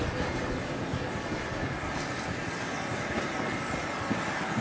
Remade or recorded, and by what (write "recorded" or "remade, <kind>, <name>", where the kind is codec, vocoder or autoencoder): recorded